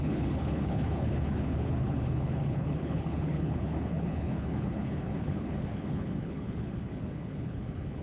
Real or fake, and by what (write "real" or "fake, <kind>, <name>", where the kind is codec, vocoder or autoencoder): fake, codec, HILCodec